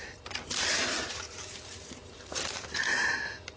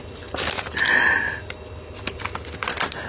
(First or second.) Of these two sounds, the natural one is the second